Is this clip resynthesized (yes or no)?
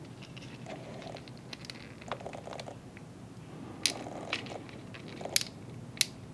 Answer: no